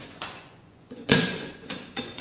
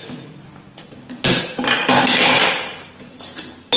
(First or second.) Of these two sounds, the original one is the second